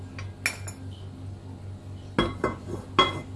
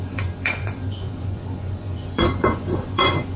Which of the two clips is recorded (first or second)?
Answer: first